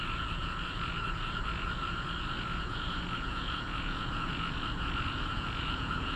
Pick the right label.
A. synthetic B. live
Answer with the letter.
A